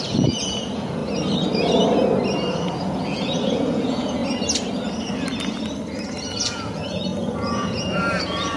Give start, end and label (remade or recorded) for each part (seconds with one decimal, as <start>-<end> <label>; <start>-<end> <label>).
0.0-1.0 remade; 1.0-2.7 recorded; 2.7-4.2 remade; 4.2-6.4 recorded; 6.4-8.6 remade